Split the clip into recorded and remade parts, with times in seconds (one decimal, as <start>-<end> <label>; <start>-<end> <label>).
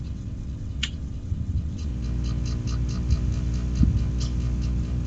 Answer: 0.0-1.9 remade; 1.9-5.1 recorded